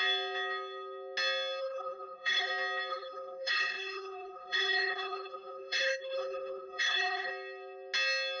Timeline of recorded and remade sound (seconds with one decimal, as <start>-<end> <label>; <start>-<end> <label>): 0.0-1.6 recorded; 1.6-2.5 remade; 2.5-2.9 recorded; 2.9-7.3 remade; 7.3-8.4 recorded